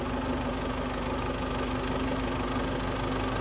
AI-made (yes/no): no